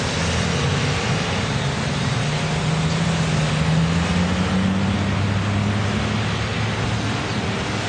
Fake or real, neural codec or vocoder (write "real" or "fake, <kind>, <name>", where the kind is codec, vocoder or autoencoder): real